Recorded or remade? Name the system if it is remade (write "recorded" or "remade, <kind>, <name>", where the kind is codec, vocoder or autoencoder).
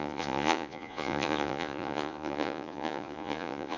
remade, vocoder, Vocos